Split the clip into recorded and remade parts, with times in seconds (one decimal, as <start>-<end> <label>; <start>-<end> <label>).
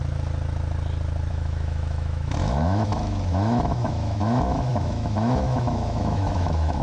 0.0-1.3 recorded; 1.3-6.8 remade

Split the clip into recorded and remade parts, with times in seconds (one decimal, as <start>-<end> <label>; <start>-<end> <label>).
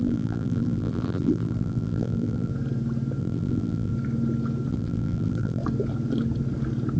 0.0-2.5 remade; 2.5-3.2 recorded; 3.2-3.9 remade; 3.9-4.7 recorded; 4.7-5.6 remade; 5.6-7.0 recorded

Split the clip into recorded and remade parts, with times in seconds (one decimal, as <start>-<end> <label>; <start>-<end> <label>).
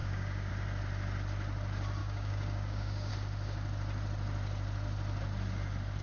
0.0-0.5 remade; 0.5-2.0 recorded; 2.0-3.1 remade; 3.1-6.0 recorded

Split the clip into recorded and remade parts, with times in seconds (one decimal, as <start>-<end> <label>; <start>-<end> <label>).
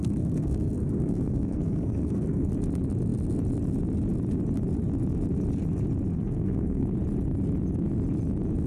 0.0-2.5 remade; 2.5-6.1 recorded; 6.1-6.9 remade; 6.9-8.7 recorded